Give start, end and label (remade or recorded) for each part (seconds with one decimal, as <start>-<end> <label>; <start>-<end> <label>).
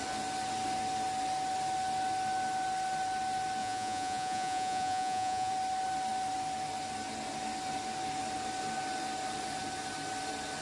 0.0-3.6 recorded; 3.6-5.5 remade; 5.5-10.6 recorded